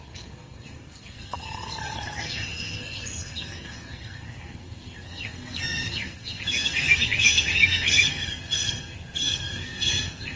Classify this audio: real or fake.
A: fake